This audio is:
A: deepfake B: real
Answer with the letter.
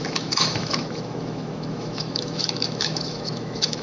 A